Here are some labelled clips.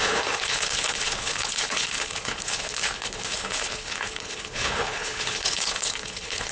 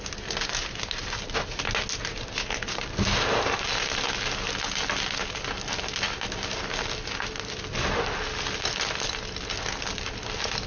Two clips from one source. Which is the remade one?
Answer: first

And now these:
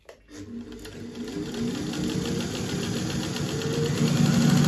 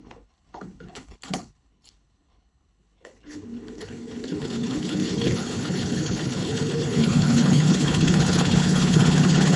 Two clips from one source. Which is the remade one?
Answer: second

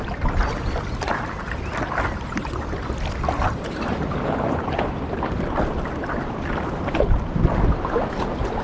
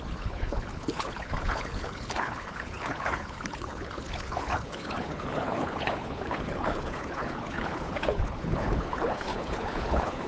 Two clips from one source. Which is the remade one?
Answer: second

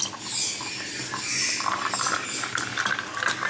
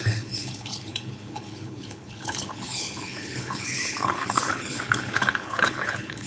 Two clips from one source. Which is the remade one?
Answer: second